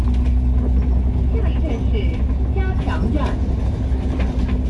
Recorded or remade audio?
recorded